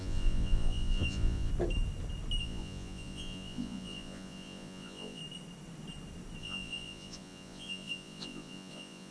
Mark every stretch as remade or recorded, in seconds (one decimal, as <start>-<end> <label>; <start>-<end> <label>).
0.0-1.5 remade; 1.5-2.4 recorded; 2.4-5.2 remade; 5.2-6.4 recorded; 6.4-9.1 remade